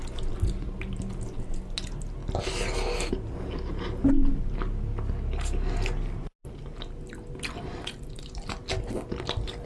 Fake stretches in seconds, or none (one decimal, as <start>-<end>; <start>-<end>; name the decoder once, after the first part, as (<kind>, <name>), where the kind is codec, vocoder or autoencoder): none